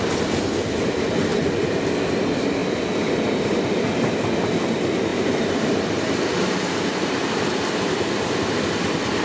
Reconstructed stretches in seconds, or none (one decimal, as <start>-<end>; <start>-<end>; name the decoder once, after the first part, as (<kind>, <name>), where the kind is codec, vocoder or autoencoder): 5.1-7.4 (vocoder, BigVGAN v2)